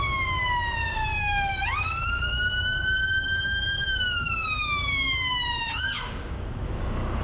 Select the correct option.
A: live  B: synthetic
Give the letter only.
B